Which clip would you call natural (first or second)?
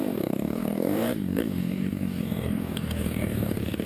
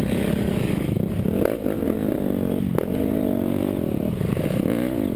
second